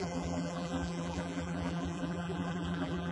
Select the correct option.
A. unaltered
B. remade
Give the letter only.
B